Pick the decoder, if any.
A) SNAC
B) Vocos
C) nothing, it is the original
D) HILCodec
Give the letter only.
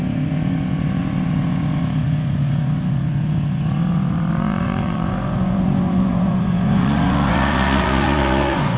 B